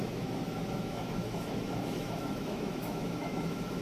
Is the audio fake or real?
fake